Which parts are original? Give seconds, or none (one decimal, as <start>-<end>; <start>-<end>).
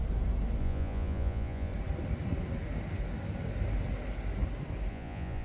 0.0-0.6; 1.7-4.9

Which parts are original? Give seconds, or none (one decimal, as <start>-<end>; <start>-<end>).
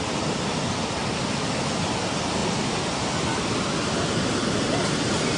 0.0-5.4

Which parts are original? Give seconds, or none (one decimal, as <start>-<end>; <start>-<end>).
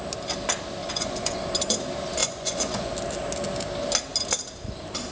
0.0-0.8; 1.5-2.2; 2.9-5.1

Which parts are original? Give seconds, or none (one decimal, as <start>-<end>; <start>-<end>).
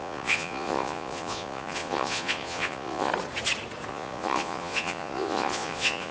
3.1-3.9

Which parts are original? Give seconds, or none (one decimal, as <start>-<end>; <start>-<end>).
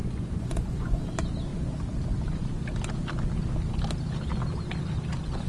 1.0-5.5